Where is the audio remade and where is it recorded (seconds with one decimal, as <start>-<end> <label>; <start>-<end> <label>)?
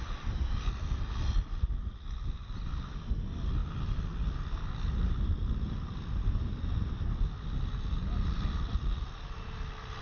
0.0-10.0 recorded